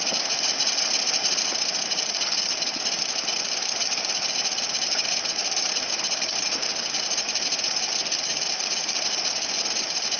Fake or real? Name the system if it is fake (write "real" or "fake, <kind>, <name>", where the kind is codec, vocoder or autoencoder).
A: fake, vocoder, BigVGAN v2